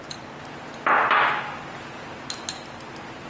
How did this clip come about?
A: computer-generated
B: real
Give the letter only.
B